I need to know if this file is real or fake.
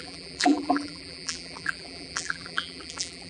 fake